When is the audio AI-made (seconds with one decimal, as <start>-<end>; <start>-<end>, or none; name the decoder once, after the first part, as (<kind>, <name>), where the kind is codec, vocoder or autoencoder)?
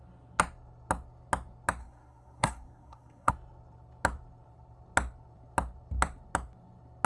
1.8-3.3 (codec, SNAC)